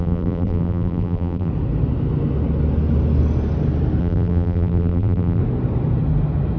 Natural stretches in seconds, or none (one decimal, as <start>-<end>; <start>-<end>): 1.5-4.0; 5.4-6.6